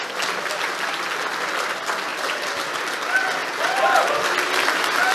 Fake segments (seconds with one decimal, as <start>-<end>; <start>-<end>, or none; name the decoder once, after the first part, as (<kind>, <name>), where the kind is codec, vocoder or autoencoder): none